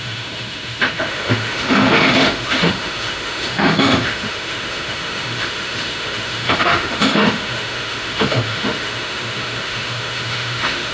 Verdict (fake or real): fake